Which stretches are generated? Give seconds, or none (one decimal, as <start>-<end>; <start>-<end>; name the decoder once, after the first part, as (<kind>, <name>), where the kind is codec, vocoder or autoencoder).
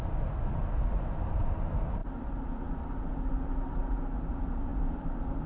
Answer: 0.0-3.8 (vocoder, BigVGAN v2); 4.3-5.5